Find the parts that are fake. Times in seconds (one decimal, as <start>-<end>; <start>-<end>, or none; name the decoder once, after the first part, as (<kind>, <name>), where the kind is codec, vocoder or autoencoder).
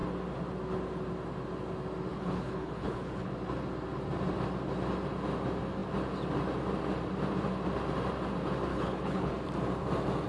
2.1-3.3 (codec, HILCodec); 8.7-9.3